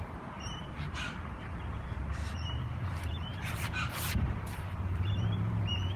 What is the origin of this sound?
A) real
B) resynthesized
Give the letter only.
B